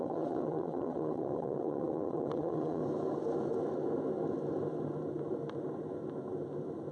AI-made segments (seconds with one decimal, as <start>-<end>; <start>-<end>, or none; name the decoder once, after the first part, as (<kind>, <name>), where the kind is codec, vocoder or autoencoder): 0.0-2.8 (vocoder, WaveNeXt)